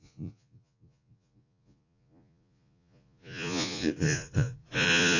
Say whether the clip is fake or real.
fake